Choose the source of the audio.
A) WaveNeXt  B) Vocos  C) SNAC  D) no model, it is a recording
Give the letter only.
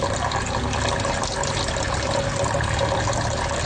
D